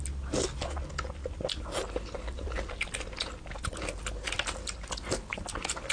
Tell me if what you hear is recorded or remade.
recorded